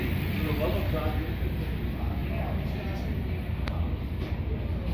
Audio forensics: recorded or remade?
recorded